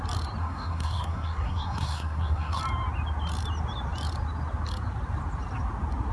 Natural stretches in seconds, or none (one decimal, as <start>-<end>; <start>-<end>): 0.0-0.4; 2.6-6.1